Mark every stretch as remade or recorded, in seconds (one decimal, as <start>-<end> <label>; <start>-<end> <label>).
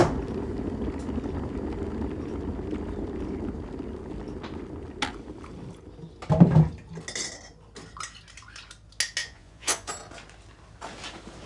0.0-9.2 recorded; 9.2-9.9 remade; 9.9-11.5 recorded